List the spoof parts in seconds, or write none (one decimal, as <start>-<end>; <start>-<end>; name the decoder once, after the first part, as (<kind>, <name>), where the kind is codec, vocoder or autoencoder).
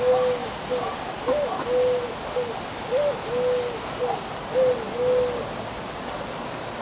none